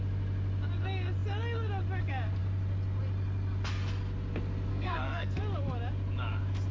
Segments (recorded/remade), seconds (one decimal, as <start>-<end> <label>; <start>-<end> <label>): 0.0-4.7 recorded; 4.7-5.4 remade; 5.4-6.7 recorded